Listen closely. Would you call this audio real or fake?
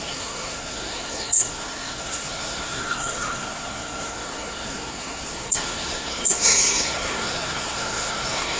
fake